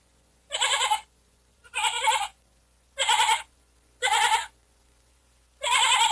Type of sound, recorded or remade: remade